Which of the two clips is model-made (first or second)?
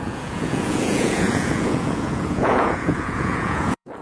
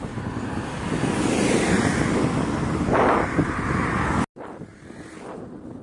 first